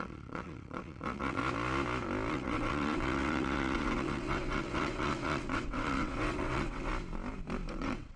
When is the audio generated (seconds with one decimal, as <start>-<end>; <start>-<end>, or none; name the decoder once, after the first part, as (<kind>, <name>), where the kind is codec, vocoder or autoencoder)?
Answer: 0.0-1.4 (vocoder, WaveNeXt); 2.3-6.9; 7.7-8.2